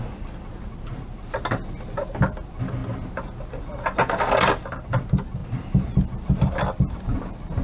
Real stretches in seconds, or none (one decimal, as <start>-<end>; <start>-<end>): 0.0-7.6